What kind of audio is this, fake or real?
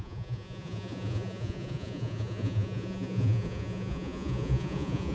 fake